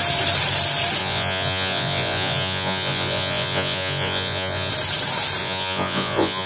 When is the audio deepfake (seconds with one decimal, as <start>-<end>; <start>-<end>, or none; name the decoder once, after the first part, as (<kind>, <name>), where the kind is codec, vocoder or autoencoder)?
1.0-4.7 (vocoder, Vocos); 5.4-6.5